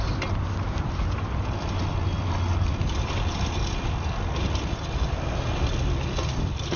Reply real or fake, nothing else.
real